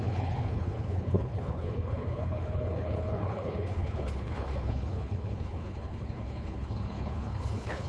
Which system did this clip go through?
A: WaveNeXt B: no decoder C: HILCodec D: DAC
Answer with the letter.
C